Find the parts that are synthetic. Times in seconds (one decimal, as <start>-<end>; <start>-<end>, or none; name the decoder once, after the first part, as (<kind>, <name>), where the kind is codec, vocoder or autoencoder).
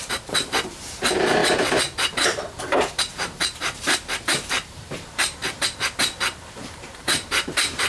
0.0-5.4 (vocoder, BigVGAN v2); 6.5-7.9